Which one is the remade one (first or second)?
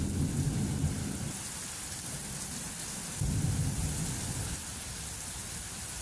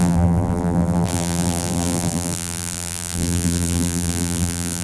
second